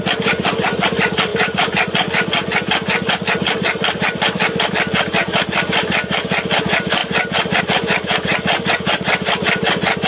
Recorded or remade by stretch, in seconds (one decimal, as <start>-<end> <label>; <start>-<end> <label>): 0.0-10.1 recorded